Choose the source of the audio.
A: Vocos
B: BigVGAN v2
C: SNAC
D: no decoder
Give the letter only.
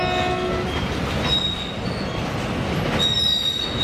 D